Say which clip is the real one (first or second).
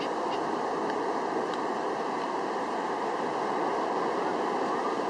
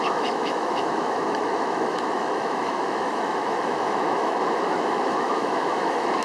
first